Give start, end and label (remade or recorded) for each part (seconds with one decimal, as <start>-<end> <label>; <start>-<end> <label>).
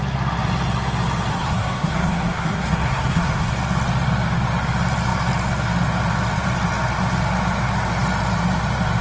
0.0-1.3 recorded; 1.3-3.5 remade; 3.5-9.0 recorded